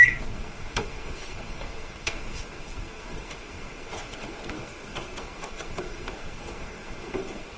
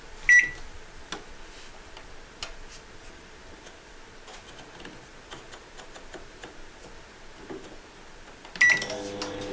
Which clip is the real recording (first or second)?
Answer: second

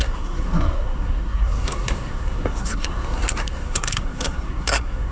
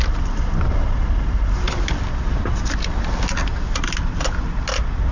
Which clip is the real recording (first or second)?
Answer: second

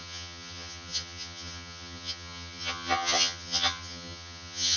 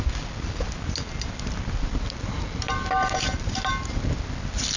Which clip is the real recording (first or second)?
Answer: second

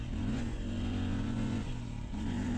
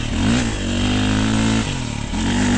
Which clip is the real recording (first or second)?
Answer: second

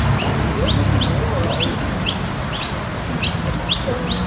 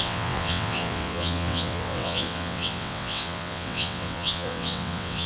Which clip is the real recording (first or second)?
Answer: first